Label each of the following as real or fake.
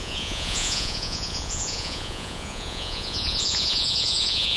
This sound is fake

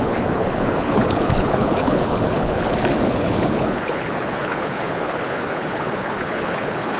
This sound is fake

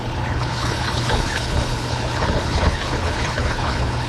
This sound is fake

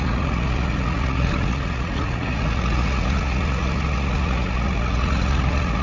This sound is fake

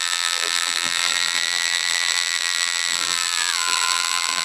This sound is fake